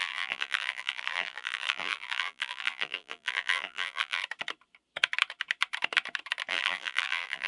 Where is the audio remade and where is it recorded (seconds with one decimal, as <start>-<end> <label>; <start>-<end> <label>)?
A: 0.0-4.2 remade; 4.2-6.5 recorded; 6.5-7.5 remade